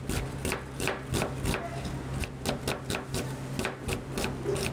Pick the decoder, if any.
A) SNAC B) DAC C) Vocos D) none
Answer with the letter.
D